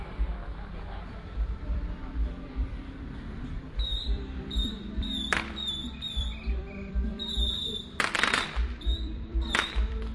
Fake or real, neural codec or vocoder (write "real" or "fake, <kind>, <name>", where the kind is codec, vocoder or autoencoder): fake, vocoder, BigVGAN v2